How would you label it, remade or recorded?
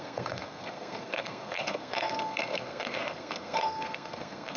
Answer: remade